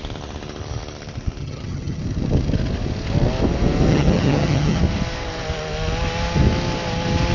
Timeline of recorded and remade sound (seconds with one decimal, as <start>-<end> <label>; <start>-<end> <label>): 0.0-1.4 recorded; 1.4-2.0 remade; 2.0-3.9 recorded; 3.9-4.8 remade; 4.8-7.3 recorded